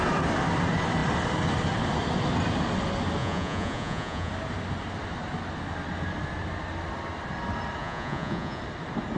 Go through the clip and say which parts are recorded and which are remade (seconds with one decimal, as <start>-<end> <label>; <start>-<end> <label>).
0.0-3.2 recorded; 3.2-4.3 remade; 4.3-7.8 recorded; 7.8-8.6 remade; 8.6-9.2 recorded